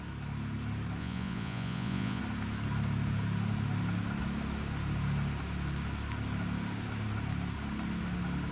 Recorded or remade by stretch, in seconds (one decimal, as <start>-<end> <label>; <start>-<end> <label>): 0.0-1.0 recorded; 1.0-2.2 remade; 2.2-8.5 recorded